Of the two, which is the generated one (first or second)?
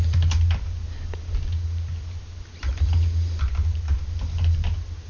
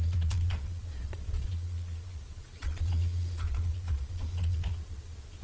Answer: second